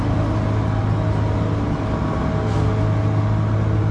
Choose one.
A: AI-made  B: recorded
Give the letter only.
B